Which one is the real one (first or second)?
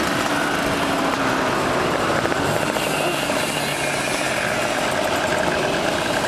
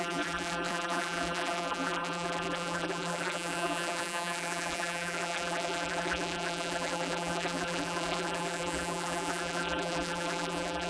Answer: first